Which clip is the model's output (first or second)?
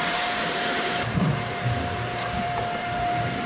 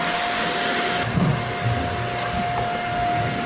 first